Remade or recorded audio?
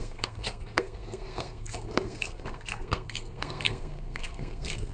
remade